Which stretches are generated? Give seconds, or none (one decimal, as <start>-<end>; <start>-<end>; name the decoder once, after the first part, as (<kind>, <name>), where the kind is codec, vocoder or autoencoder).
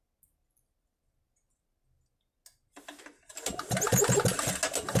none